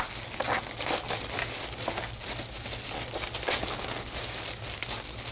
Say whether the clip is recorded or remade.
recorded